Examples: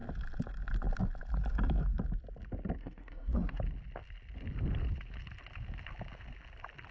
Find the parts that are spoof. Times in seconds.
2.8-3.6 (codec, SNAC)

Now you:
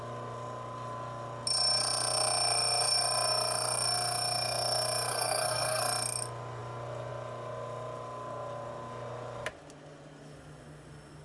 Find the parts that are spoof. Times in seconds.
5.1-5.8 (codec, SNAC)